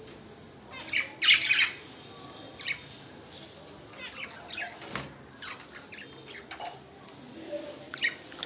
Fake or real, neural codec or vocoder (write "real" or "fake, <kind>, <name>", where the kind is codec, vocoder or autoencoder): real